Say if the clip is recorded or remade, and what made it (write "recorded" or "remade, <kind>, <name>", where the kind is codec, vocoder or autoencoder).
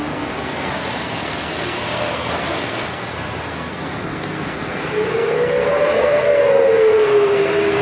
remade, codec, SNAC